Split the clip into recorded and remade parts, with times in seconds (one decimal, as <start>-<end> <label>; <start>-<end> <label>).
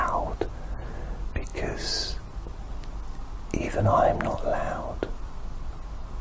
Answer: 0.0-6.2 recorded